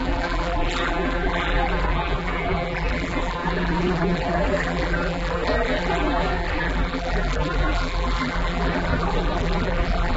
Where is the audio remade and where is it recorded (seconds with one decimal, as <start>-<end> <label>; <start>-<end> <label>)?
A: 0.0-10.2 remade